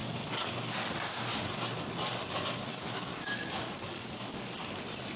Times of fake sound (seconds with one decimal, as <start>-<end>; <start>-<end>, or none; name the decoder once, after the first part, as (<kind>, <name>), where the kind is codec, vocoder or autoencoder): 2.7-3.6 (autoencoder, DAC-VAE)